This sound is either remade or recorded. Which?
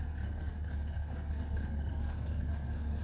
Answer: remade